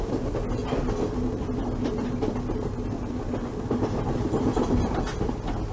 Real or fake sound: real